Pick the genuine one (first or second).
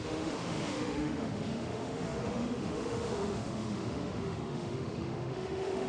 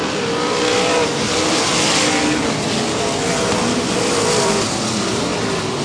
second